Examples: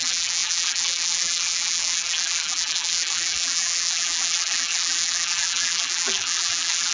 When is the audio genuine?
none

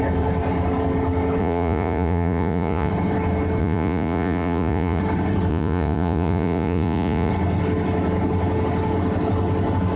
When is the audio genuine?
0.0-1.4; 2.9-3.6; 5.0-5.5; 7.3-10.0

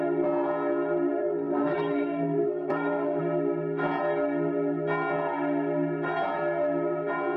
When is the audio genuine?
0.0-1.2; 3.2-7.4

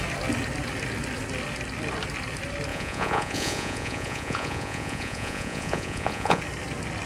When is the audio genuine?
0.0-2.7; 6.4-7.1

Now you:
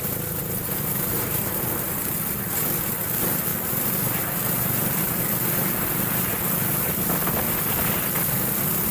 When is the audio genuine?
0.0-8.9

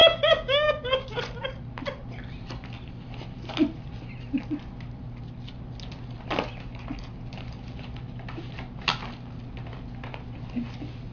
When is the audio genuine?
1.2-11.1